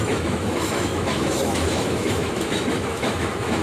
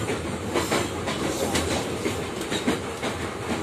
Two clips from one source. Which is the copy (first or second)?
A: first